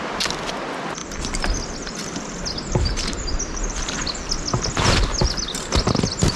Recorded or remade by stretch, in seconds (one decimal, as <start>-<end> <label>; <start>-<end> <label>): 0.0-6.4 recorded